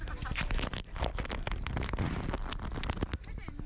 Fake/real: fake